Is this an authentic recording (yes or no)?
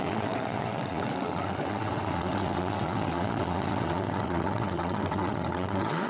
no